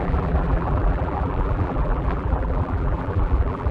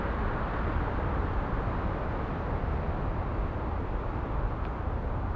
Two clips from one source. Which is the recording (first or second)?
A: second